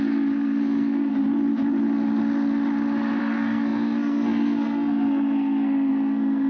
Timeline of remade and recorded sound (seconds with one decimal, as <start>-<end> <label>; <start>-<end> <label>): 0.0-1.1 remade; 1.1-3.2 recorded; 3.2-6.5 remade